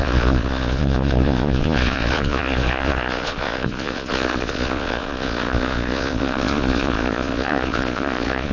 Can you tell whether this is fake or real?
fake